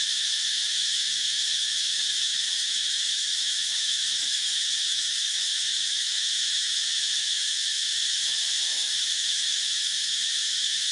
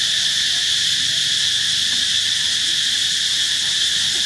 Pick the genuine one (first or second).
second